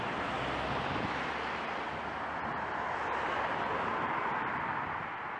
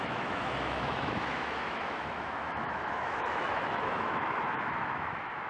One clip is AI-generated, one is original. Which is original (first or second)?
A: first